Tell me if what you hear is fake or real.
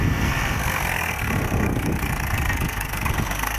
fake